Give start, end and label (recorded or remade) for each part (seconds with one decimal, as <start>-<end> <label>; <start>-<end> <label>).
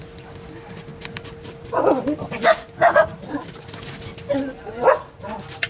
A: 0.0-5.7 recorded